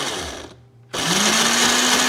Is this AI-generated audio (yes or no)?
no